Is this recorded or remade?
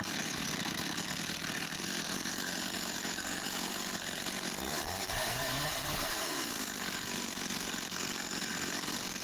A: remade